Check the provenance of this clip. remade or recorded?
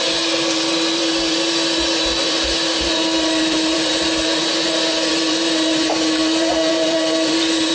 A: remade